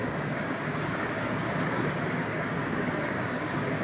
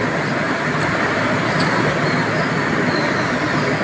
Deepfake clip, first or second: first